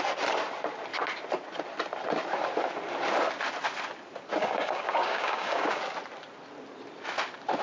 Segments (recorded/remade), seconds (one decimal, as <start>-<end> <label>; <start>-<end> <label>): 0.0-4.4 recorded; 4.4-5.8 remade; 5.8-7.6 recorded